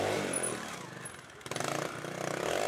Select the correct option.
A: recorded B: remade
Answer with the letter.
A